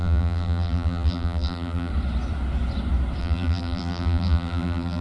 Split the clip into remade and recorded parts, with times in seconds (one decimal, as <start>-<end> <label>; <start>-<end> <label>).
0.0-1.9 remade; 1.9-3.2 recorded; 3.2-5.0 remade